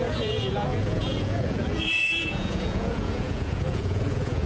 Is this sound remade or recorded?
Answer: remade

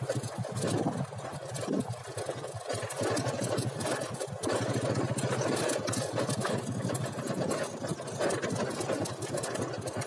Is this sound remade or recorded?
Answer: recorded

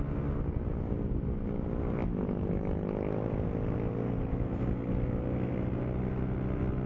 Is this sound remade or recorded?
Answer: recorded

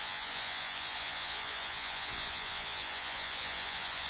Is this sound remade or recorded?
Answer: remade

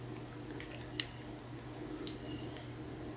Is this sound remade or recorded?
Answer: recorded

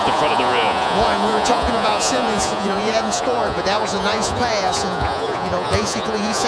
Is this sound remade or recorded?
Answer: remade